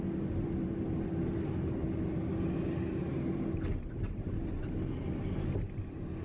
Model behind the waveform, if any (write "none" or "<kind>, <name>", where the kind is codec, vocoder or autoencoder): none